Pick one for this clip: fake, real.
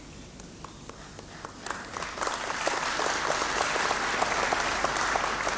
real